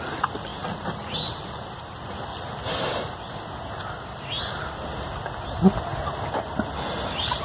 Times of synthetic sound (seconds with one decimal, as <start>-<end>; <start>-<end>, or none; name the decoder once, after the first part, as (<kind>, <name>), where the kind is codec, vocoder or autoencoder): 0.5-4.9 (vocoder, BigVGAN v2)